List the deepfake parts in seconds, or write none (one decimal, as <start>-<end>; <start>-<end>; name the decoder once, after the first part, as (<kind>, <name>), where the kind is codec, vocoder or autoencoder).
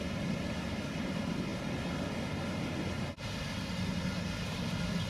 none